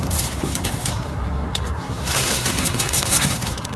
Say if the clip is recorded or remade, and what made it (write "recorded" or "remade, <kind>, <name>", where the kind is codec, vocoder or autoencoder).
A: remade, codec, SNAC